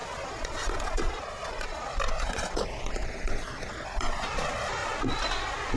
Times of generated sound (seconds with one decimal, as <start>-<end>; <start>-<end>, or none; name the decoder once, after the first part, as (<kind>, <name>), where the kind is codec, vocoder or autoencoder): 0.0-4.8 (vocoder, Vocos)